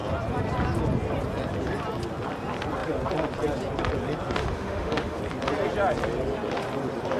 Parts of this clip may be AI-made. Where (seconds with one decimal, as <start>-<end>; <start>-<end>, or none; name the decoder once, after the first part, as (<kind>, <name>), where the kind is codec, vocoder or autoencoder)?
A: 4.4-5.2 (autoencoder, DAC-VAE)